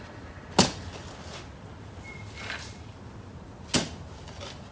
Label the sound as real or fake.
real